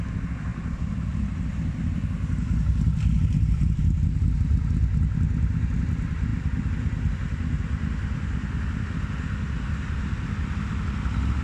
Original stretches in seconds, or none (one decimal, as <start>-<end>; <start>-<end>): 0.0-11.4

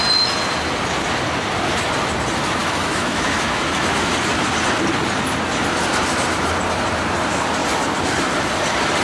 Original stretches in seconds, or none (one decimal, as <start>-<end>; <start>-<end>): 0.0-2.6; 4.1-9.0

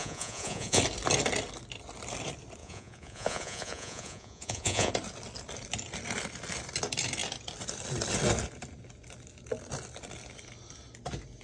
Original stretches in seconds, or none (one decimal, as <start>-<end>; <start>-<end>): 0.8-2.6; 4.9-11.4

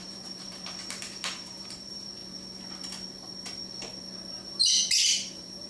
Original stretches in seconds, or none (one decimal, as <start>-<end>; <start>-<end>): 2.2-4.3

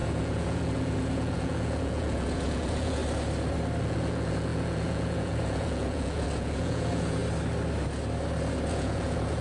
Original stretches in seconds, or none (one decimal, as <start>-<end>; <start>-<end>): 3.0-3.8; 7.2-8.7

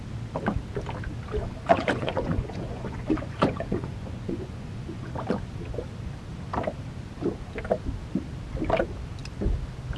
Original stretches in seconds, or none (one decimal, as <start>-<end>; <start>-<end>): 0.0-1.4; 5.1-10.0

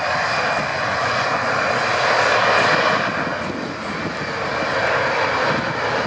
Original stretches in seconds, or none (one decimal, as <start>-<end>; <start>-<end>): 0.0-0.7; 1.5-6.1